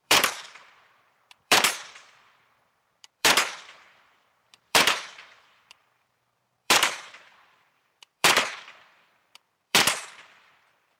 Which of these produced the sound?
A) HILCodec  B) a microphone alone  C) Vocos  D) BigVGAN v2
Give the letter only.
D